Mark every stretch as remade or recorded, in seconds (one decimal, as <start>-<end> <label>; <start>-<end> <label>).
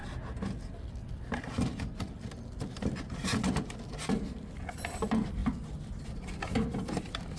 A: 0.0-7.4 recorded